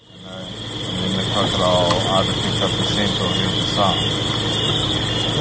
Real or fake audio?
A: real